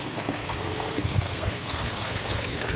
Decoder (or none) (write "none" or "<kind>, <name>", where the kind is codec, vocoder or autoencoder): codec, SNAC